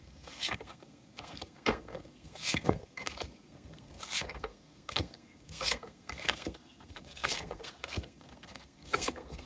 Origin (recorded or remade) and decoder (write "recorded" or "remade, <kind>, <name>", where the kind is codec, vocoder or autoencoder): remade, codec, SNAC